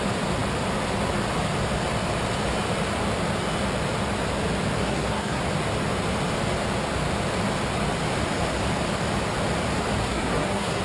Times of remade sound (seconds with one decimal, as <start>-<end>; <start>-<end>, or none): 4.8-5.4; 10.0-10.8